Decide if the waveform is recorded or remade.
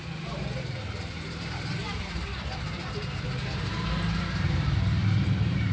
remade